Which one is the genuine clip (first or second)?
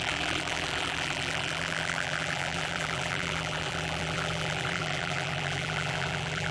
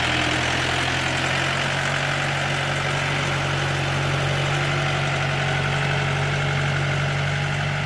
second